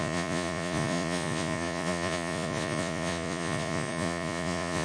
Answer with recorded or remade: remade